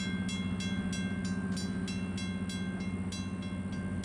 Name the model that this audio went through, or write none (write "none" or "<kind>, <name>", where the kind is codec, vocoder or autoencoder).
none